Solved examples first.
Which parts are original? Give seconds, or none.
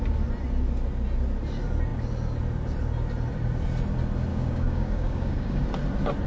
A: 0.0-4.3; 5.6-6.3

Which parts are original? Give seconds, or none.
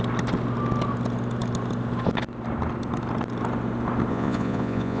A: 0.0-4.1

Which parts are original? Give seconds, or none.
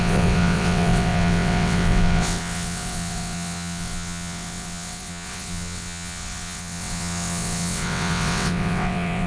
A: none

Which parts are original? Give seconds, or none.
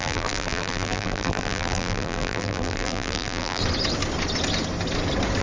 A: 3.6-5.4